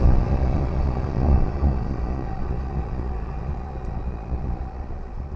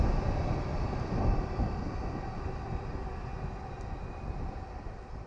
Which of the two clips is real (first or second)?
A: second